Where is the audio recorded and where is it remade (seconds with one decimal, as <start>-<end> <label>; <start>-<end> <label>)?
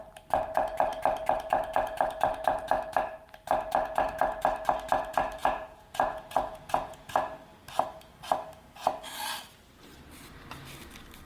0.0-5.4 recorded; 5.4-7.1 remade; 7.1-11.3 recorded